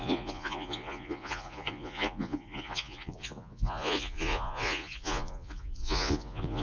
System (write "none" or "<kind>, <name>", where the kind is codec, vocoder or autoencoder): vocoder, Vocos